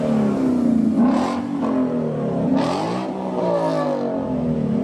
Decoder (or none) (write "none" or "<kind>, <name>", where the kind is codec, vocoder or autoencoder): none